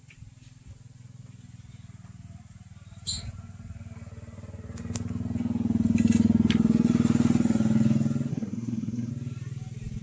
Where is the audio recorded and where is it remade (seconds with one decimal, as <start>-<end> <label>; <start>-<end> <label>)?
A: 0.0-8.3 recorded; 8.3-9.1 remade; 9.1-10.0 recorded